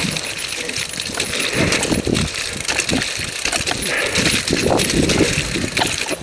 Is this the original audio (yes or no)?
no